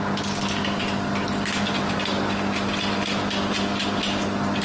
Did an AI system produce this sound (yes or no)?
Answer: no